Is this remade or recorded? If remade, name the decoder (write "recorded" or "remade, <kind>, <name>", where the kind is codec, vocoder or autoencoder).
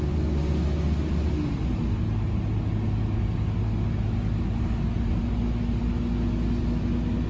recorded